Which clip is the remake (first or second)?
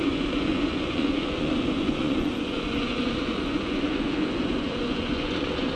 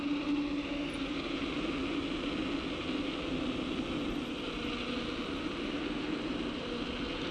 first